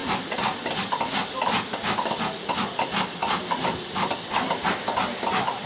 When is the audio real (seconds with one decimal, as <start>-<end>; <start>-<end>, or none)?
0.6-5.7